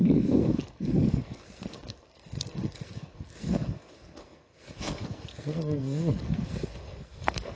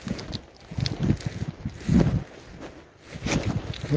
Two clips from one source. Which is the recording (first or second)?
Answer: second